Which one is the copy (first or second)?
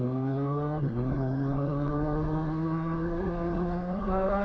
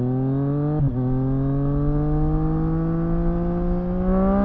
first